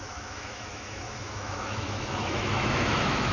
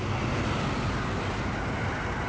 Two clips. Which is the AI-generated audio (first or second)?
first